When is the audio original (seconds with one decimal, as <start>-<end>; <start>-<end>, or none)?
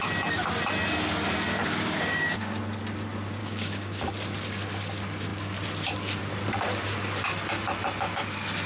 0.0-1.6; 2.6-3.4; 4.1-8.7